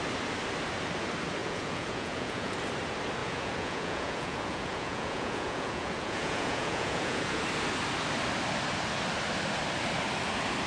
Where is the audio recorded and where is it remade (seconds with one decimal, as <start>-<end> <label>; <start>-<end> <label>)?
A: 0.0-1.4 recorded; 1.4-2.5 remade; 2.5-3.2 recorded; 3.2-7.4 remade; 7.4-10.7 recorded